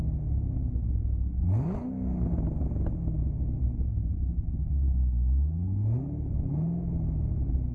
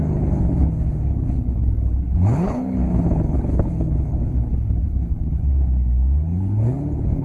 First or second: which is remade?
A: second